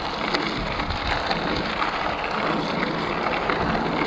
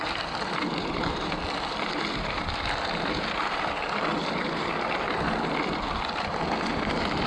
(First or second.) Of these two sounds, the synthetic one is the second